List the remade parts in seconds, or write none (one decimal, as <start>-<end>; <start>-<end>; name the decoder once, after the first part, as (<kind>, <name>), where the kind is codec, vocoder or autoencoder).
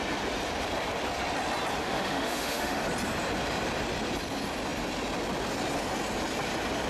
1.8-2.8 (autoencoder, DAC-VAE)